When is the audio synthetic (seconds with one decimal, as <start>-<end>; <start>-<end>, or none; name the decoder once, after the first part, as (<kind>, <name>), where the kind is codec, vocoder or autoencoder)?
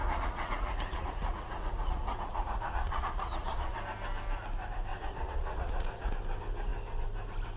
0.0-3.7 (vocoder, Vocos); 4.9-6.1